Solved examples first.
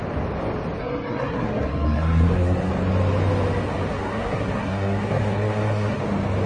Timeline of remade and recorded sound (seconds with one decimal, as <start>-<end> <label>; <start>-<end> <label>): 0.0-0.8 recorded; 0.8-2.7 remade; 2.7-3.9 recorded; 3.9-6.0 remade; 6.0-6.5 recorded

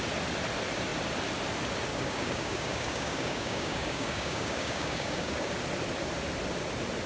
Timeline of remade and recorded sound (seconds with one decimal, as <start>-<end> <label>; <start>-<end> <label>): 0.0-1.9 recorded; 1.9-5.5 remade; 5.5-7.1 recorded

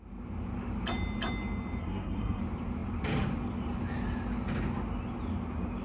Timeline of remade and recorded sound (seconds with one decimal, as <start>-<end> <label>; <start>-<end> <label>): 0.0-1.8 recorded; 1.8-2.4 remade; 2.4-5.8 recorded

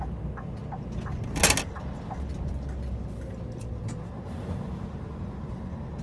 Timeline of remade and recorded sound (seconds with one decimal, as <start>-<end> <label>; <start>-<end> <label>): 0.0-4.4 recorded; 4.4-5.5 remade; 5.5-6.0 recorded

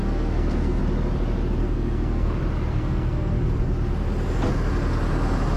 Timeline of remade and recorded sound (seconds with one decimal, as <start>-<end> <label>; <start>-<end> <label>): 0.0-0.8 remade; 0.8-1.6 recorded; 1.6-2.3 remade; 2.3-2.7 recorded; 2.7-3.5 remade; 3.5-5.6 recorded

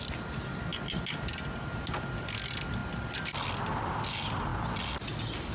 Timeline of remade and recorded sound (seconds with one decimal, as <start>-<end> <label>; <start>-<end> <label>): 0.0-5.5 recorded